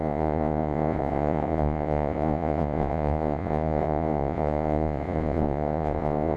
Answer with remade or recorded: remade